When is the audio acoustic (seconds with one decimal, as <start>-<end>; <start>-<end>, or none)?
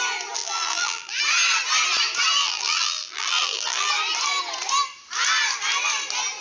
0.0-0.4; 1.2-2.4; 3.9-6.4